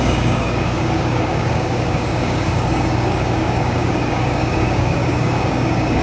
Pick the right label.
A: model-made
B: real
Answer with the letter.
A